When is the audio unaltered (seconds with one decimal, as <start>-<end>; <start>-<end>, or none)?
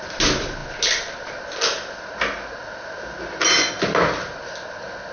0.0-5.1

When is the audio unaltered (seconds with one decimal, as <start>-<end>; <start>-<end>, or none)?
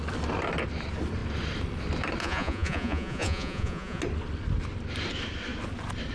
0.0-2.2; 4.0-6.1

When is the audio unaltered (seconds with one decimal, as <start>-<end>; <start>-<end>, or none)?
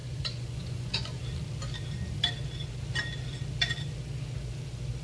1.2-5.0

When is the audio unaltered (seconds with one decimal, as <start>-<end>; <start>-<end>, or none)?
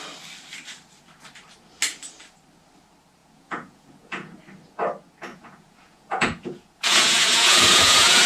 0.0-3.2; 4.4-5.3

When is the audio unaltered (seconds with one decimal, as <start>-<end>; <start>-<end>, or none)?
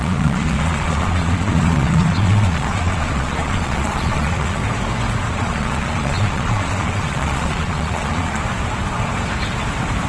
4.6-5.3; 8.4-10.1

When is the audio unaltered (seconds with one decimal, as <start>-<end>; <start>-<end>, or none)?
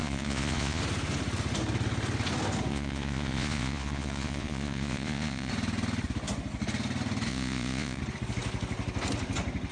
0.8-2.7; 5.5-7.3; 8.0-9.7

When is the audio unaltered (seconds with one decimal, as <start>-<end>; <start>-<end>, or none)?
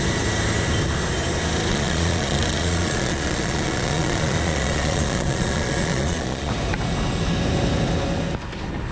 0.0-1.7; 6.5-8.9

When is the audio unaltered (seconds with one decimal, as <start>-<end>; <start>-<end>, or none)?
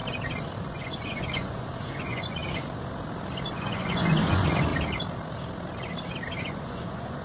0.0-0.6; 2.4-3.5; 4.7-6.4